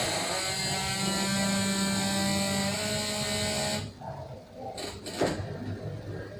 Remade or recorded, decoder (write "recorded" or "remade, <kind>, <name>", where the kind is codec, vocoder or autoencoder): recorded